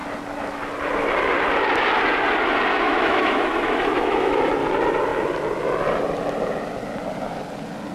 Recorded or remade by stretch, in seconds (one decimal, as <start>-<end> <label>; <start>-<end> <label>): 0.0-2.7 recorded; 2.7-4.4 remade; 4.4-7.9 recorded